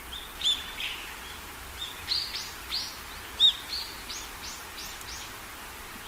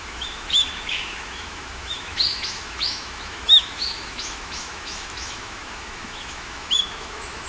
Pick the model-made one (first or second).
second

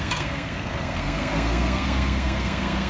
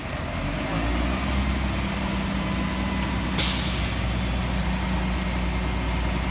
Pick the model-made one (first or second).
first